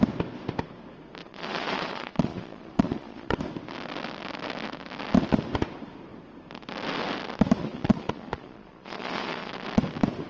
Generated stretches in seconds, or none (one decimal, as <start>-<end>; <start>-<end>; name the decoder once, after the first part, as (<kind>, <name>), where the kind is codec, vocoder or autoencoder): 1.2-3.4 (vocoder, Vocos); 7.6-9.5